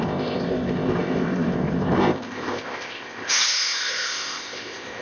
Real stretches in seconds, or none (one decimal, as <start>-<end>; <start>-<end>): none